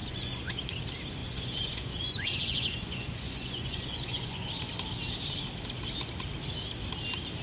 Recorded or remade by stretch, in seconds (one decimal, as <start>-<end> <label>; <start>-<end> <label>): 0.0-0.7 remade; 0.7-1.2 recorded; 1.2-4.5 remade; 4.5-7.4 recorded